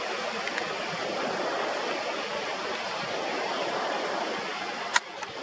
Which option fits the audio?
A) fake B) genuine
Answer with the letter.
B